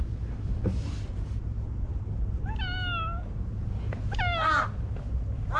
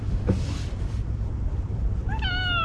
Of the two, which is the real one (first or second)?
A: first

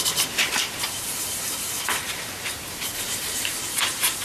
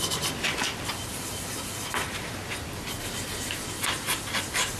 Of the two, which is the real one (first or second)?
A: second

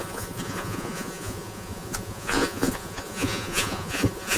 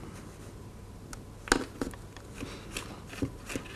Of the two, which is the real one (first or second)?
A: second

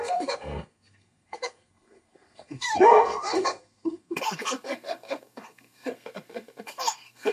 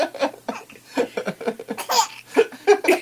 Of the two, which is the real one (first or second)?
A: second